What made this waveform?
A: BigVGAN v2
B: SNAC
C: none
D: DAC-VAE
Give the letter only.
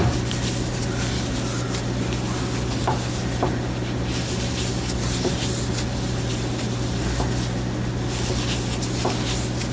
C